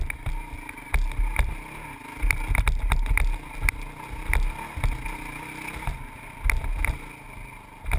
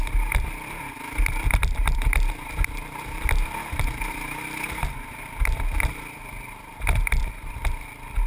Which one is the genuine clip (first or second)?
first